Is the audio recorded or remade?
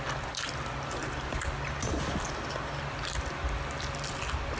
recorded